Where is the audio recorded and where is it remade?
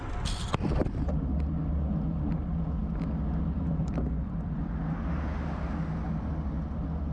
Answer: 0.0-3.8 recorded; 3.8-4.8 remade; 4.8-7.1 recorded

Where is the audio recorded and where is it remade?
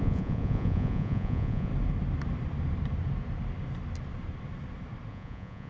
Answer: 0.0-1.7 remade; 1.7-5.1 recorded; 5.1-5.7 remade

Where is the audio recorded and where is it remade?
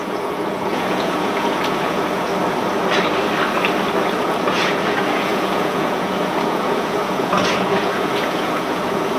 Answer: 0.0-2.3 remade; 2.3-4.2 recorded; 4.2-9.2 remade